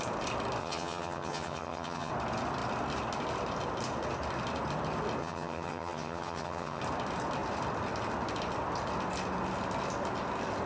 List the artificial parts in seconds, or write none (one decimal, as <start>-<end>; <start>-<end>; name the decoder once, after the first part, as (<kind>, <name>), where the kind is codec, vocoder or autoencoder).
0.6-2.1 (vocoder, HiFi-GAN); 5.2-6.8